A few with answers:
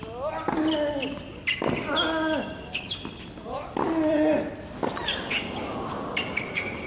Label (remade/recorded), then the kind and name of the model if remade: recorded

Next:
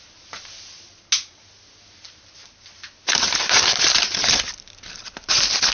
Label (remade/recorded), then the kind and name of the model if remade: recorded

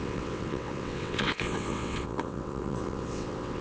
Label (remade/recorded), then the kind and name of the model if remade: remade, vocoder, WaveNeXt